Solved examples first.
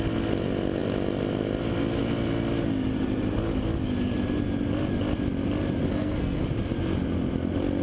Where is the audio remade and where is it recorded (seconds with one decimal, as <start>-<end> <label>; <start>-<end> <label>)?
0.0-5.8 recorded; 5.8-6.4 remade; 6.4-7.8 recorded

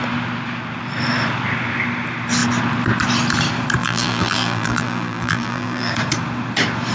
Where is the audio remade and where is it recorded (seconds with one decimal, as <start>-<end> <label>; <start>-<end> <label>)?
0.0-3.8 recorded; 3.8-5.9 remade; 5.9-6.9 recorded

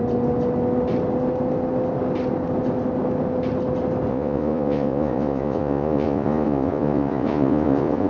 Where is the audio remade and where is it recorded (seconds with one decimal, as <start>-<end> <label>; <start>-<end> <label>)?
0.0-4.1 recorded; 4.1-8.1 remade

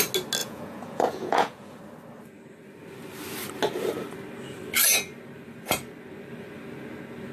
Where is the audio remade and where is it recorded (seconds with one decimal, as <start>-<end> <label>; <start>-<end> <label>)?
0.0-0.4 recorded; 0.4-1.8 remade; 1.8-7.3 recorded

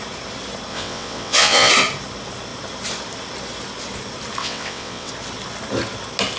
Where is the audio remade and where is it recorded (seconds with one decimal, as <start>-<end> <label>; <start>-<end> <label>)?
0.0-0.7 recorded; 0.7-1.7 remade; 1.7-4.4 recorded; 4.4-5.1 remade; 5.1-6.4 recorded

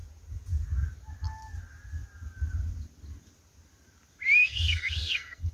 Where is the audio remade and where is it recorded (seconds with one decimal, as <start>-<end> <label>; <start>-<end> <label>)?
0.0-4.4 recorded; 4.4-5.5 remade

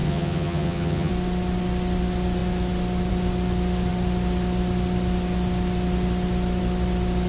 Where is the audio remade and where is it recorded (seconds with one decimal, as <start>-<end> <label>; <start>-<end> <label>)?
0.0-1.1 remade; 1.1-7.3 recorded